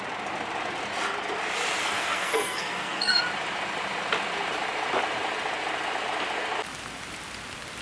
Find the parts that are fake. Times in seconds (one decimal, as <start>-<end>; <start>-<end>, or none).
1.8-3.2